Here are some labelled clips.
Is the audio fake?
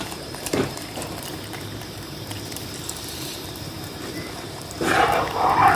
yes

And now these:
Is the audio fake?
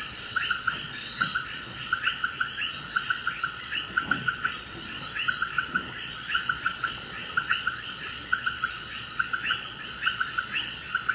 yes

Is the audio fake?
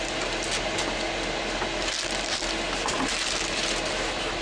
no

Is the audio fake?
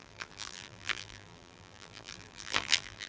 yes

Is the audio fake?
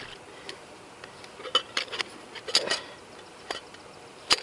no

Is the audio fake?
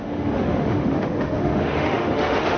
yes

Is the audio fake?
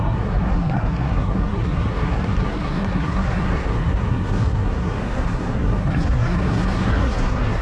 yes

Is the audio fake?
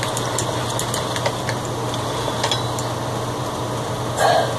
no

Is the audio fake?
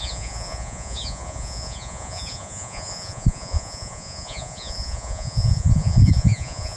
yes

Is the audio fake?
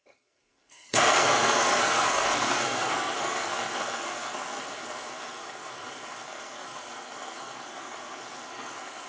yes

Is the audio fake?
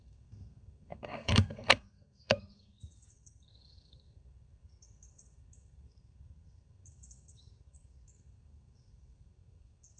yes